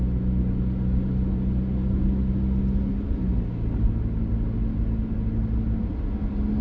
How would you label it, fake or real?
real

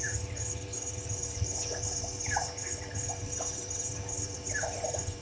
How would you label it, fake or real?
fake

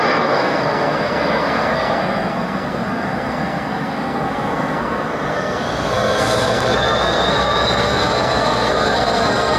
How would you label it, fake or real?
fake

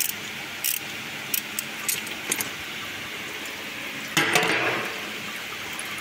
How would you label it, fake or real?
real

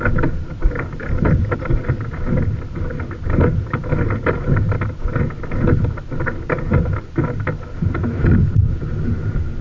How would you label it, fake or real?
real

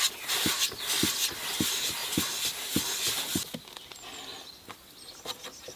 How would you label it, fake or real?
real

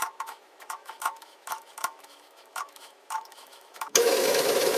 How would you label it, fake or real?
fake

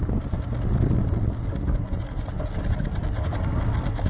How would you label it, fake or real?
real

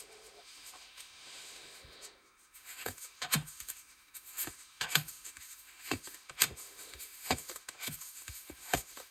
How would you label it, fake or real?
fake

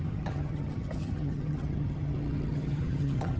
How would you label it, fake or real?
fake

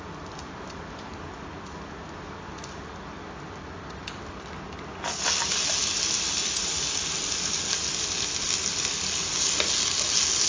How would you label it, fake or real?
real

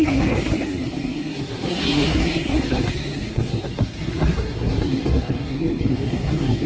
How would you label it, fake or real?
fake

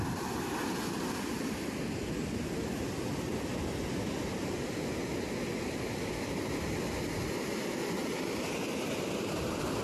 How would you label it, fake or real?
real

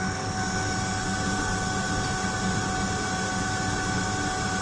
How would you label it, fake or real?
real